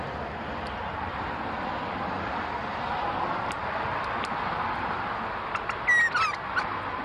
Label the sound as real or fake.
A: real